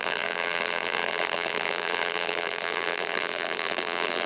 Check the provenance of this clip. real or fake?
fake